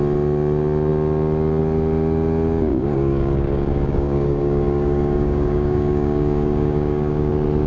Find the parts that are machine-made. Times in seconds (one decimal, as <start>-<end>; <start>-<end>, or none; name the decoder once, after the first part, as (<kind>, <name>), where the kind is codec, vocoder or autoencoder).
2.7-7.3 (codec, DAC)